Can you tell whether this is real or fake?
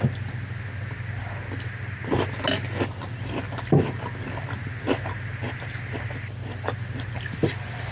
fake